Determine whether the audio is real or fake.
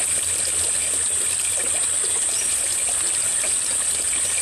real